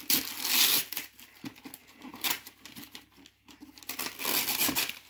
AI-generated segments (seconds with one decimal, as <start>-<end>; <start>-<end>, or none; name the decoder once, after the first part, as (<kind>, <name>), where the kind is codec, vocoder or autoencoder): none